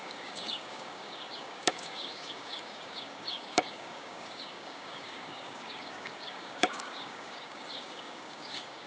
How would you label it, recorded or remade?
remade